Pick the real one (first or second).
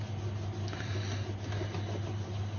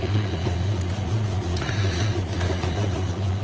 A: first